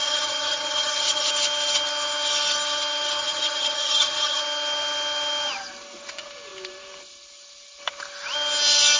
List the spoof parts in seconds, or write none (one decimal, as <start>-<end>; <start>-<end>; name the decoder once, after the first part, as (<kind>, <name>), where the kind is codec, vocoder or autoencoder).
0.0-1.3 (vocoder, HiFi-GAN); 3.2-4.4

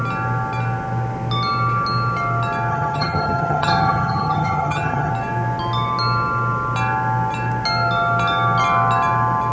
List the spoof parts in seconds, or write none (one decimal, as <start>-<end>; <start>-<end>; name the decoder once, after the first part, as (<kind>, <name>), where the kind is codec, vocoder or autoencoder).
2.7-5.1 (vocoder, HiFi-GAN)

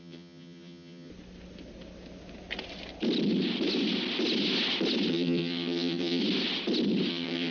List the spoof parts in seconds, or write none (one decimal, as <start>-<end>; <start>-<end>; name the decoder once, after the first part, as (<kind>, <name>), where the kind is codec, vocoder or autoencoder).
0.0-1.1 (vocoder, HiFi-GAN); 5.1-6.2; 7.1-7.5